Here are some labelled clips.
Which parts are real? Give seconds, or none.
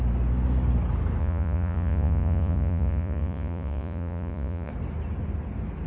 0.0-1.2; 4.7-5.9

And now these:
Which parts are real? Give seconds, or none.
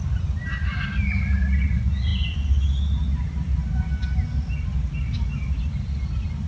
0.0-6.5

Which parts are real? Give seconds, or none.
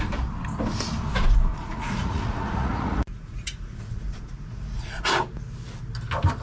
0.0-1.5; 5.0-6.4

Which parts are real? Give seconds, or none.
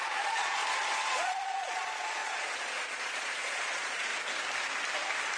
0.6-1.1; 4.1-5.4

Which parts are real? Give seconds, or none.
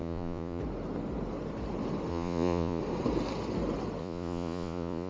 0.6-2.1; 2.8-4.0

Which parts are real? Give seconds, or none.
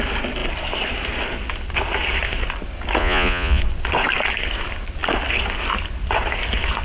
0.0-3.0; 3.6-6.8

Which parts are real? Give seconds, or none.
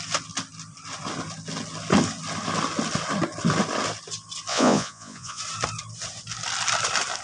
0.0-4.5; 5.4-7.2